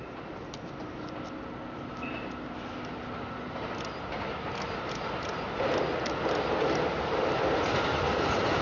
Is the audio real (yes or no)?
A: yes